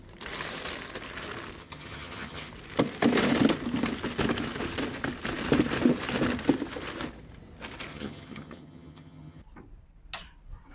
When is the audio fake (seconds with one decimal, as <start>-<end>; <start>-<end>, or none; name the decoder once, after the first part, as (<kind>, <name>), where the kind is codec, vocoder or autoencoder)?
1.6-2.5 (vocoder, HiFi-GAN); 7.9-9.4